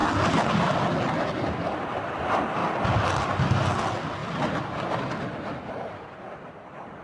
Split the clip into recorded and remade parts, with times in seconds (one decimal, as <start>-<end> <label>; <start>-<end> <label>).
0.0-2.6 recorded; 2.6-3.2 remade; 3.2-7.0 recorded